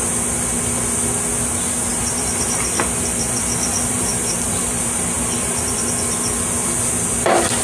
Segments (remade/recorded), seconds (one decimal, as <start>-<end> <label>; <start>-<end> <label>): 0.0-1.9 recorded; 1.9-6.1 remade; 6.1-7.6 recorded